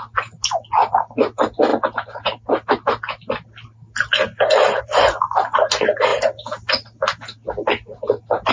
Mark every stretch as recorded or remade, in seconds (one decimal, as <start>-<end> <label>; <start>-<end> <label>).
0.0-8.5 recorded